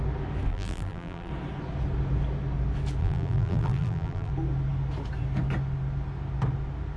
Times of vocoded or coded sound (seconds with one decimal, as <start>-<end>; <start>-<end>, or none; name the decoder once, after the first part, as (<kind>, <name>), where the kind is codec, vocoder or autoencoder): 0.5-1.3 (vocoder, BigVGAN v2); 3.0-4.3